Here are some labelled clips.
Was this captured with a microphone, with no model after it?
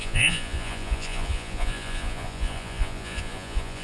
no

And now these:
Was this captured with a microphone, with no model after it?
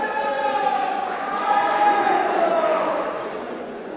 no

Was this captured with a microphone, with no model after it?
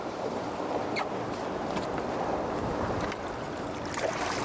yes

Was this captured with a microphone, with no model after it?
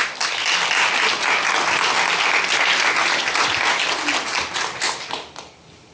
yes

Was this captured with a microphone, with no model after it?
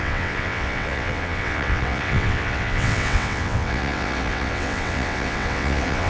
no